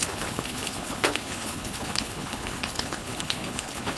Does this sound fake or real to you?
fake